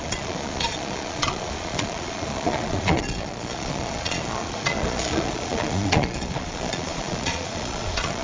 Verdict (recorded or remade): remade